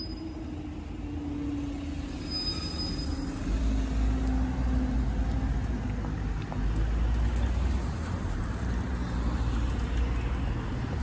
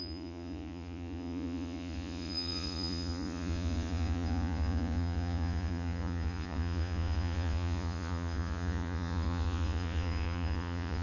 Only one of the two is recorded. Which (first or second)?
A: first